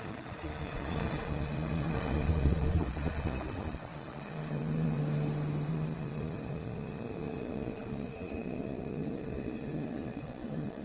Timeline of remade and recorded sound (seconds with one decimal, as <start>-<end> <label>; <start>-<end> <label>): 0.0-5.0 remade; 5.0-5.7 recorded; 5.7-10.8 remade